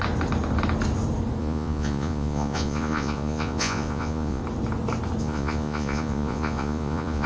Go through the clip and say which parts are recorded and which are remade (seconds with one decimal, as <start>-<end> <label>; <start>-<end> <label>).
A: 0.0-1.4 recorded; 1.4-4.4 remade; 4.4-5.2 recorded; 5.2-7.3 remade